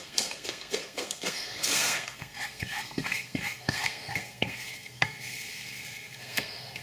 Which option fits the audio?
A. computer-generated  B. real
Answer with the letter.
A